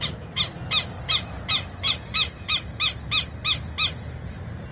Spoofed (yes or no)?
no